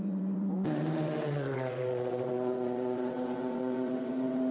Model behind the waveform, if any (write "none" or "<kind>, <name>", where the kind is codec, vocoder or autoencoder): vocoder, WaveNeXt